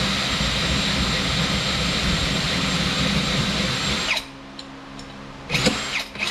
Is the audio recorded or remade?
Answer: recorded